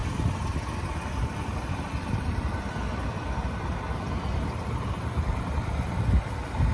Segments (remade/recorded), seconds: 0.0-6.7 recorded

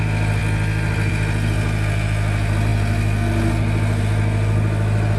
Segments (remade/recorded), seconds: 0.0-5.2 recorded

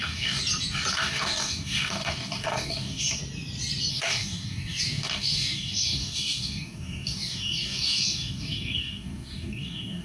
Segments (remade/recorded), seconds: 0.0-0.4 remade; 0.4-0.9 recorded; 0.9-3.2 remade; 3.2-3.9 recorded; 3.9-10.0 remade

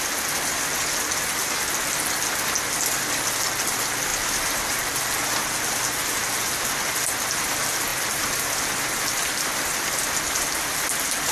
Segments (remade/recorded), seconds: 0.0-4.1 recorded; 4.1-5.0 remade; 5.0-7.9 recorded; 7.9-10.3 remade; 10.3-11.3 recorded